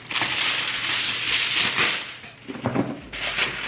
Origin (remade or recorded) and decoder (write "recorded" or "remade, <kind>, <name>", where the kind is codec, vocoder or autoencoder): recorded